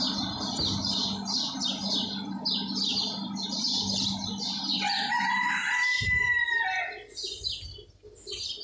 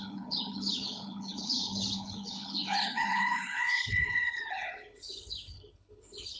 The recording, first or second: first